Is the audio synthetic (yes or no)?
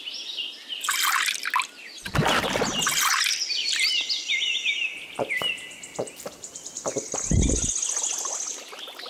no